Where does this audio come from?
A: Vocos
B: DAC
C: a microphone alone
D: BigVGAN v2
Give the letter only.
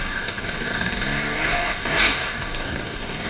B